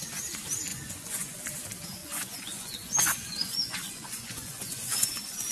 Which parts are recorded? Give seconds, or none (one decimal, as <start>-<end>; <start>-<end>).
0.0-0.7; 1.4-2.0